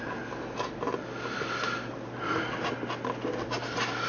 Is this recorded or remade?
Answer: recorded